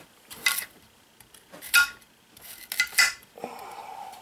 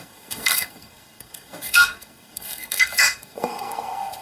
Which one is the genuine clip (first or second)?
first